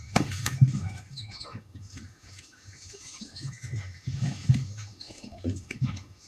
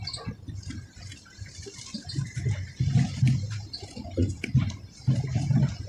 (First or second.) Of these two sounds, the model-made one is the first